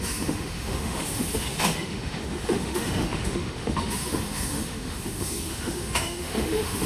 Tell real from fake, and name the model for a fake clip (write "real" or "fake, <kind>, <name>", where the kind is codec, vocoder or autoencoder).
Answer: fake, autoencoder, DAC-VAE